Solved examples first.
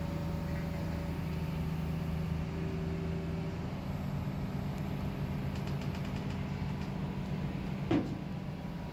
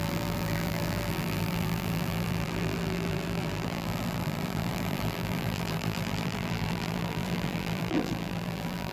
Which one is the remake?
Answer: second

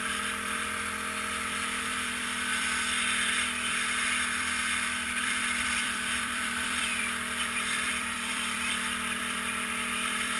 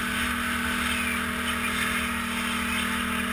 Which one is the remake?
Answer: first